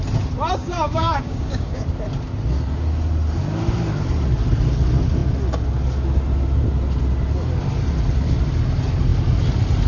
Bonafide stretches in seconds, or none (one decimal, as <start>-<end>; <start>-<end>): 0.0-0.6; 1.8-9.9